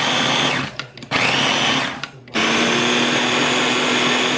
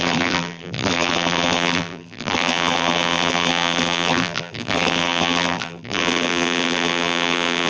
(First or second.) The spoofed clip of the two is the second